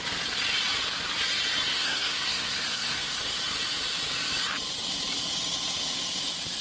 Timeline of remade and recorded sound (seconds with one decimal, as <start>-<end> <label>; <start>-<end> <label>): 0.0-1.7 recorded; 1.7-3.2 remade; 3.2-6.6 recorded